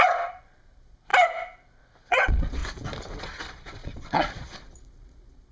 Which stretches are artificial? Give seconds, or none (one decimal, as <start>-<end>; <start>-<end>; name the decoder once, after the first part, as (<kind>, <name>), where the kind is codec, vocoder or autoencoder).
0.0-1.1 (vocoder, Vocos); 2.1-2.6; 3.2-5.5